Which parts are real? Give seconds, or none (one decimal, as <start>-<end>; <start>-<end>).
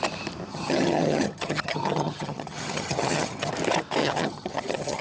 0.0-0.5; 3.5-4.0